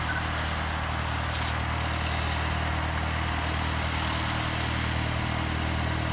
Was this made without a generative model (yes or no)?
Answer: yes